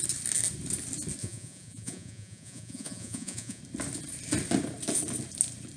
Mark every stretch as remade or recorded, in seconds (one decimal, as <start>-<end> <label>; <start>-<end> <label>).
0.0-1.2 recorded; 1.2-3.6 remade; 3.6-5.8 recorded